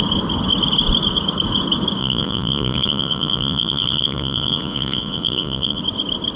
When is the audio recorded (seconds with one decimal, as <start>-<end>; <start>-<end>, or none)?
0.0-2.0; 5.8-6.4